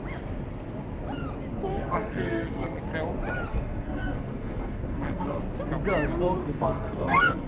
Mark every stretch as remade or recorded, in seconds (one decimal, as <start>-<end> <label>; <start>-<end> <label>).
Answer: 0.0-1.7 recorded; 1.7-2.8 remade; 2.8-3.5 recorded; 3.5-5.4 remade; 5.4-6.4 recorded; 6.4-7.5 remade